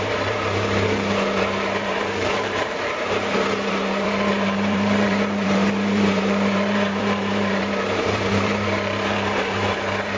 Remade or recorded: remade